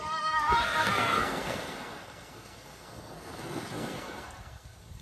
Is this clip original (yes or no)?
no